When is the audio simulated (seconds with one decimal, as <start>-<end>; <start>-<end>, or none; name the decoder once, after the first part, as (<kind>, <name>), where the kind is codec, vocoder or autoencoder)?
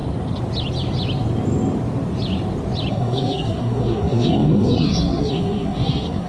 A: 2.9-6.3 (codec, SNAC)